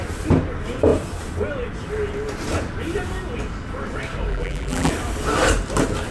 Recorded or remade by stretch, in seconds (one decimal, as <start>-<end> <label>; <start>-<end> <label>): 0.0-4.3 recorded; 4.3-4.9 remade; 4.9-6.1 recorded